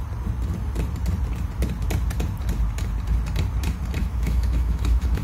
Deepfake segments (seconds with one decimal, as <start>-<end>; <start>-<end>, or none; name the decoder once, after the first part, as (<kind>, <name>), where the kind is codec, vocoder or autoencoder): 4.0-5.2 (autoencoder, DAC-VAE)